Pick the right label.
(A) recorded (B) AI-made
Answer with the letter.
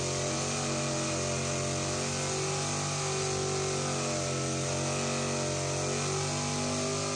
A